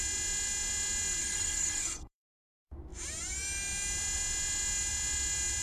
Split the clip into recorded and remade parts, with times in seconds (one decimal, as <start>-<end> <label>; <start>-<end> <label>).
0.0-1.2 recorded; 1.2-2.3 remade; 2.3-5.6 recorded